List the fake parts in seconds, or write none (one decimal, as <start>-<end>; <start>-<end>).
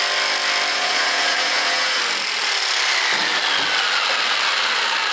0.7-2.0